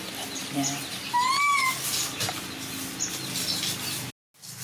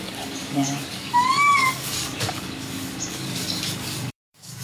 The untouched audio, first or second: first